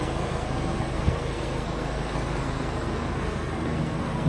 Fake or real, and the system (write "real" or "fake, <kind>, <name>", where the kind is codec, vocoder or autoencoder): fake, codec, SNAC